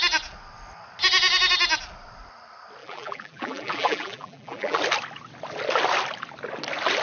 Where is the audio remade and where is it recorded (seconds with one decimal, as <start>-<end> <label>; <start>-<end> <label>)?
0.0-2.8 recorded; 2.8-4.8 remade; 4.8-7.0 recorded